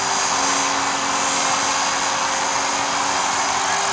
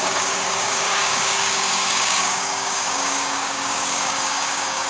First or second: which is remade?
second